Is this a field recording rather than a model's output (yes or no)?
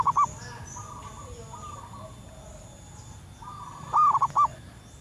yes